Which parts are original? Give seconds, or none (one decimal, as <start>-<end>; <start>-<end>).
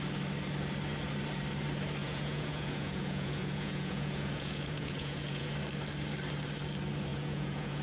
0.0-2.0; 5.5-7.1